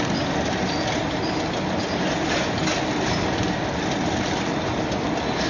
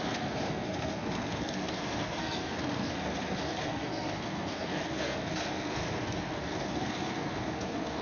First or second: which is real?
first